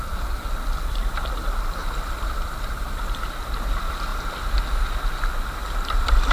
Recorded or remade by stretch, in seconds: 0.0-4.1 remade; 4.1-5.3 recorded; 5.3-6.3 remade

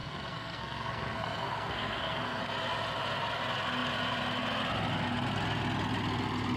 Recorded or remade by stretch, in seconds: 0.0-2.4 remade; 2.4-6.6 recorded

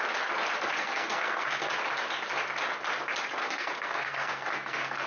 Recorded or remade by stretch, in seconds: 0.0-0.8 recorded; 0.8-1.7 remade; 1.7-3.4 recorded; 3.4-5.1 remade

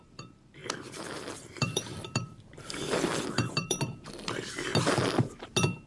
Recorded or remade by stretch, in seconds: 0.0-0.6 recorded; 0.6-4.1 remade; 4.1-5.9 recorded

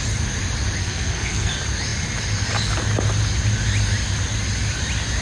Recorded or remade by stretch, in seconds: 0.0-0.8 recorded; 0.8-1.5 remade; 1.5-5.2 recorded